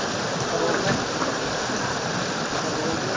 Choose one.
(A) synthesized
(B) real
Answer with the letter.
B